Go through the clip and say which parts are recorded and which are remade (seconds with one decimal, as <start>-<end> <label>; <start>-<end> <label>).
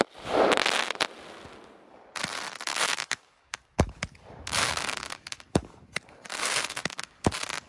0.0-2.7 recorded; 2.7-7.3 remade; 7.3-7.7 recorded